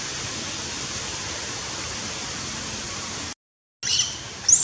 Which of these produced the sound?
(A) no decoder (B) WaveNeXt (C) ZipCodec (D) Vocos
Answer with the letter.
A